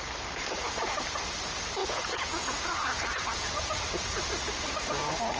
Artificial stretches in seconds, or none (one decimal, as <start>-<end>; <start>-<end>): 1.8-4.1